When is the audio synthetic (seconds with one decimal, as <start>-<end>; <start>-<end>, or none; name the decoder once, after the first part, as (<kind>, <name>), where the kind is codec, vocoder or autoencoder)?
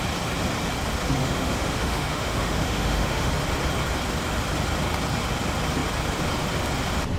1.2-3.3 (autoencoder, DAC-VAE)